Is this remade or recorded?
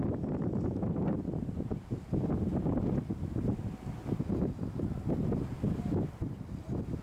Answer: recorded